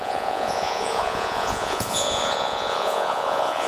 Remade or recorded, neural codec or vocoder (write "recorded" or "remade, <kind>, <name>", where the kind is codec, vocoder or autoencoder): remade, vocoder, Vocos